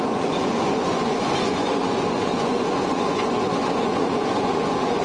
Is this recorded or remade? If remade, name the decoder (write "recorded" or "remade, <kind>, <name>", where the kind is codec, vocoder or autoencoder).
remade, vocoder, Vocos